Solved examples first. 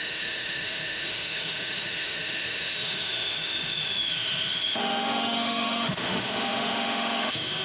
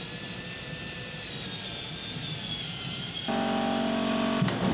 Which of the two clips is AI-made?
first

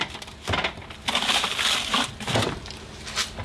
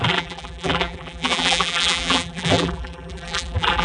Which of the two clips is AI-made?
second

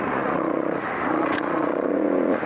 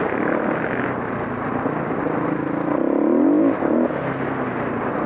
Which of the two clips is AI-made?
first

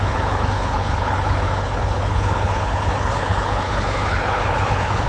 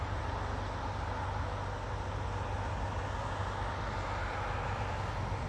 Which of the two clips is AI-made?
first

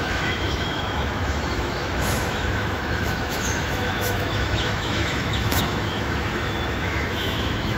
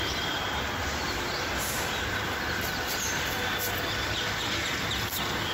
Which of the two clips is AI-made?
first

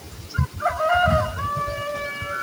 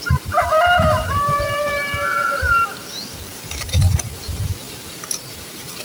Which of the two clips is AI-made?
second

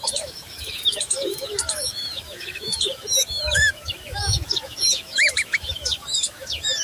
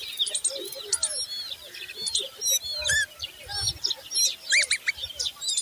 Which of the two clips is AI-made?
first